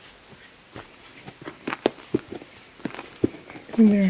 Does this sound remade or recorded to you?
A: recorded